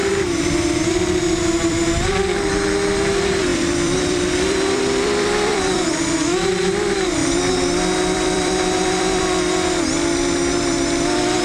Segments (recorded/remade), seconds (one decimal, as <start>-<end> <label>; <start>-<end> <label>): 0.0-2.1 remade; 2.1-3.5 recorded; 3.5-6.0 remade; 6.0-7.2 recorded; 7.2-9.2 remade; 9.2-11.4 recorded